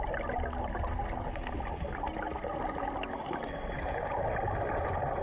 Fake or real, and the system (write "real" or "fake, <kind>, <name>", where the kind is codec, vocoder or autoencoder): real